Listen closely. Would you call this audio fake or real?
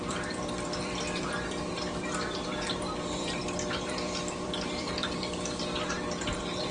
fake